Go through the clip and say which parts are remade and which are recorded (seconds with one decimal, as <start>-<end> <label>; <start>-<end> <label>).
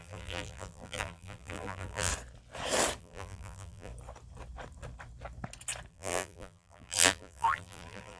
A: 0.0-2.1 remade; 2.1-3.0 recorded; 3.0-3.9 remade; 3.9-5.9 recorded; 5.9-8.2 remade